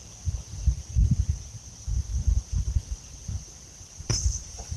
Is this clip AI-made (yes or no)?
yes